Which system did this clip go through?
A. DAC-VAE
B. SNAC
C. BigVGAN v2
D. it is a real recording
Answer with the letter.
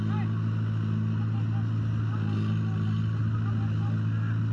D